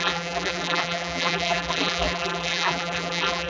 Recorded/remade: remade